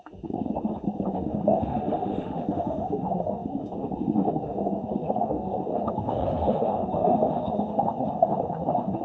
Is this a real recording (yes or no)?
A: no